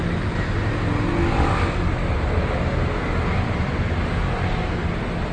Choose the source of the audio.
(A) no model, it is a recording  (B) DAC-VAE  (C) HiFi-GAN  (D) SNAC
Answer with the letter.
A